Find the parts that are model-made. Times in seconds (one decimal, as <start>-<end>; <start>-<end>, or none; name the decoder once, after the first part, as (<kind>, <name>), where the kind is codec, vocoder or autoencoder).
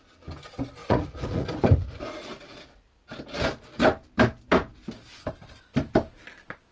0.8-2.5 (vocoder, Vocos)